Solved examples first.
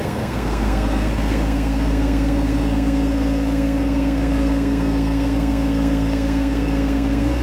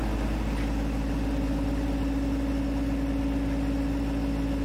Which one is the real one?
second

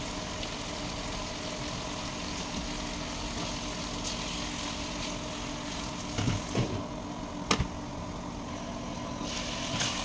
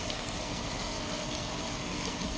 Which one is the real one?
first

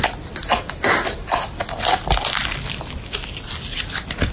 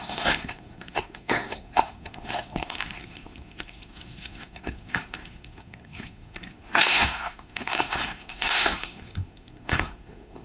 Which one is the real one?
first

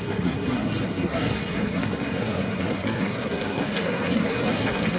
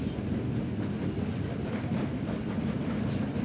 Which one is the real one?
second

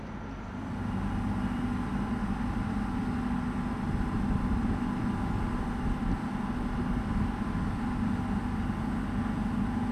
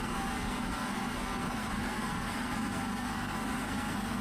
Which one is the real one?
first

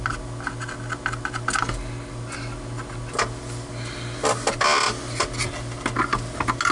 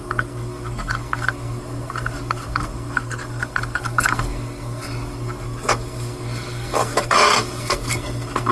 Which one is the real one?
first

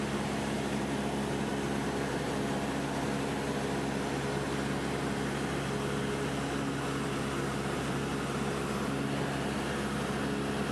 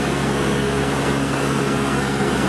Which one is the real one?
first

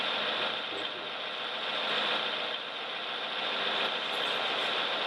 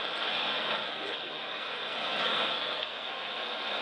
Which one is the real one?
first